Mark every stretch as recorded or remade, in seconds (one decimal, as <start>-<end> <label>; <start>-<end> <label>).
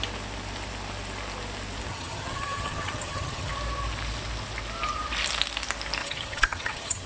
0.0-1.9 recorded; 1.9-3.5 remade; 3.5-6.0 recorded; 6.0-7.1 remade